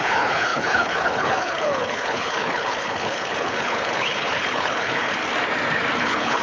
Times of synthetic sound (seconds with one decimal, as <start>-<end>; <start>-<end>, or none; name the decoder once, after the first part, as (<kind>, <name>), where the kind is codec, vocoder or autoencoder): 0.0-5.2 (codec, HILCodec); 6.0-6.4